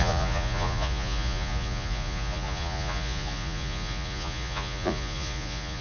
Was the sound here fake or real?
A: fake